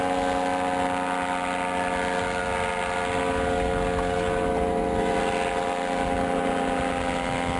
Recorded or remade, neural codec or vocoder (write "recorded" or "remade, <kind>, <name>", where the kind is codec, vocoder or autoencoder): recorded